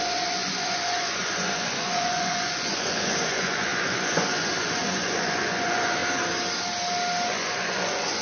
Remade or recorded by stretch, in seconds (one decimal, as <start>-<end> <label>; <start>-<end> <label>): 0.0-6.0 remade; 6.0-7.3 recorded; 7.3-8.2 remade

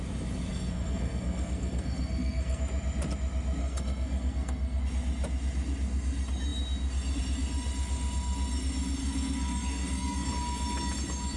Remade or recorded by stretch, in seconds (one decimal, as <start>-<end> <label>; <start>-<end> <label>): 0.0-0.5 recorded; 0.5-2.6 remade; 2.6-3.6 recorded; 3.6-4.8 remade; 4.8-9.0 recorded; 9.0-10.3 remade; 10.3-11.4 recorded

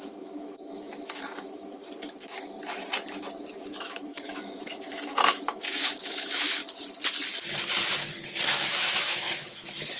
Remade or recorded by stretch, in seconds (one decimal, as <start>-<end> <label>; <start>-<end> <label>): 0.0-1.6 remade; 1.6-3.6 recorded; 3.6-6.6 remade; 6.6-8.5 recorded; 8.5-10.0 remade

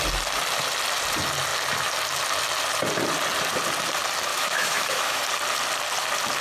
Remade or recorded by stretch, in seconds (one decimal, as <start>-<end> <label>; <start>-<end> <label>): 0.0-4.3 recorded; 4.3-5.2 remade; 5.2-6.4 recorded

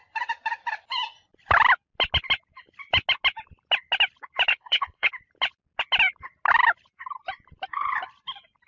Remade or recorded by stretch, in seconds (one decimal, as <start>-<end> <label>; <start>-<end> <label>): 0.0-4.5 recorded; 4.5-5.1 remade; 5.1-8.7 recorded